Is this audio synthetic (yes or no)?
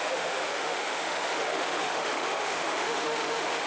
yes